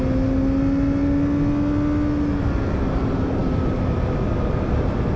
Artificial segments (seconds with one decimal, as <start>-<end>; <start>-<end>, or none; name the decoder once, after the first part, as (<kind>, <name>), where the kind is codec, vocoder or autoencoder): none

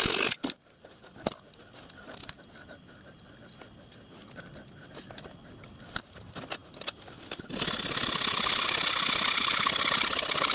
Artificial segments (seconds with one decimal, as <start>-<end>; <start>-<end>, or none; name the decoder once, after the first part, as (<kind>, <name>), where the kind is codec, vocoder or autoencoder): none

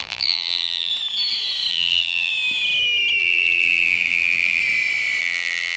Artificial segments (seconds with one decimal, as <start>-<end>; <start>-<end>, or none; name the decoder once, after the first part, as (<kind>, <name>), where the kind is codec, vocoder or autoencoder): 0.0-0.9 (vocoder, BigVGAN v2); 1.7-2.3; 3.2-4.6; 5.2-5.8